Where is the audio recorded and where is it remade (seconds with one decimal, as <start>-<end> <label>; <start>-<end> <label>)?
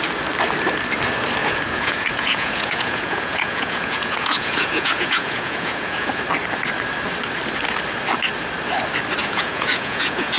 0.0-1.4 recorded; 1.4-6.2 remade; 6.2-9.2 recorded; 9.2-10.4 remade